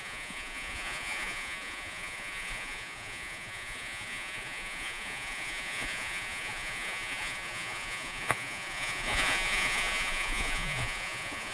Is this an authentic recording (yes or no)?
no